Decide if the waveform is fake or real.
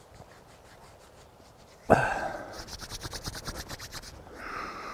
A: real